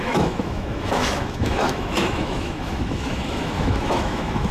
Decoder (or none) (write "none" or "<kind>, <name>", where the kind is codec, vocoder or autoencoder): autoencoder, DAC-VAE